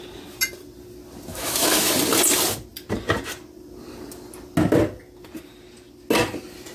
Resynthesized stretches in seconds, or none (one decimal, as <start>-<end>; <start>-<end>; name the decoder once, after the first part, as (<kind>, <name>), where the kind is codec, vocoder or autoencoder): 1.3-1.9 (autoencoder, DAC-VAE)